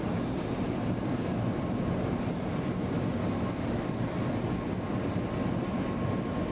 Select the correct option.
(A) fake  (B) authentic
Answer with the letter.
B